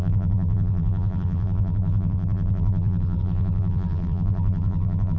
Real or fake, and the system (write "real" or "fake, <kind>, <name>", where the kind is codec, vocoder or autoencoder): fake, vocoder, BigVGAN v2